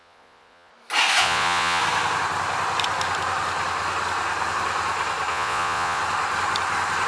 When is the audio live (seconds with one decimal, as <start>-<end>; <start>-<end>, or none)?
0.7-1.2; 1.8-5.3; 6.0-7.1